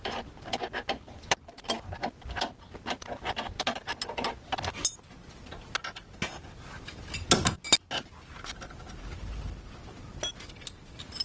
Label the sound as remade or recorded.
recorded